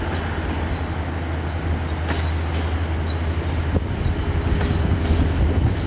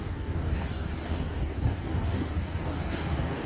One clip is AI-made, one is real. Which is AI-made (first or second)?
second